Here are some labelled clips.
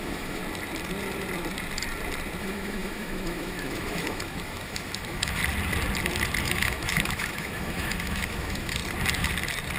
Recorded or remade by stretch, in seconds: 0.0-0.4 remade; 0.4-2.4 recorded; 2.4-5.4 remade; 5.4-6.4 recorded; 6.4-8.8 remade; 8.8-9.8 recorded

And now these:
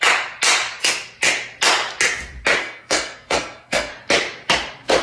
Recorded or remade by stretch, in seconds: 0.0-2.6 recorded; 2.6-3.9 remade; 3.9-5.0 recorded